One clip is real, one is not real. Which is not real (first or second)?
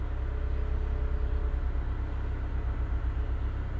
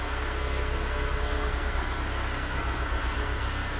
second